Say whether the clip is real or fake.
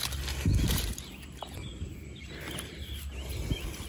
real